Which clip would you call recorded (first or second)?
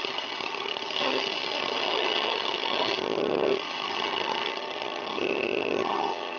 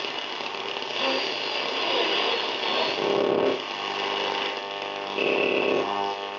second